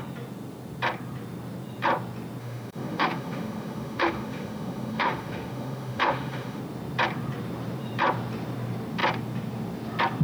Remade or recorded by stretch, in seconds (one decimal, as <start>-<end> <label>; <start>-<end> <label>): 0.0-2.4 recorded; 2.4-6.6 remade; 6.6-10.2 recorded